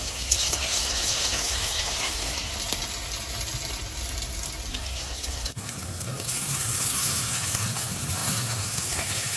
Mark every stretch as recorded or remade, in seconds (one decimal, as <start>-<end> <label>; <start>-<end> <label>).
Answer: 0.0-2.5 remade; 2.5-4.7 recorded; 4.7-9.4 remade